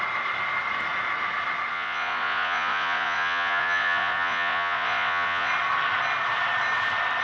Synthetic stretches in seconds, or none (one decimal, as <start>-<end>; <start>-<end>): 1.7-5.5